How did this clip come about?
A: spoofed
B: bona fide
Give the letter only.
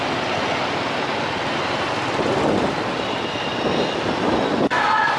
B